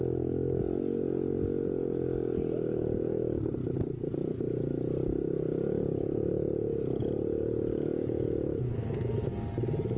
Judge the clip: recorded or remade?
recorded